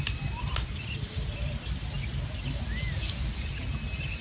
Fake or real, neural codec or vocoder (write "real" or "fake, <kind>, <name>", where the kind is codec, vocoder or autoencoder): real